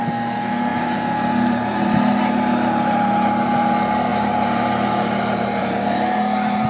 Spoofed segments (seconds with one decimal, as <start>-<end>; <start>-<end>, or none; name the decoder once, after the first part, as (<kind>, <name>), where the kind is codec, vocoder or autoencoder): 0.7-3.6 (vocoder, BigVGAN v2); 4.1-6.7